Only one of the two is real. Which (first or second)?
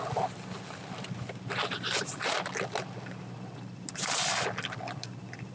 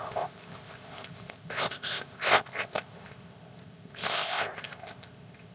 first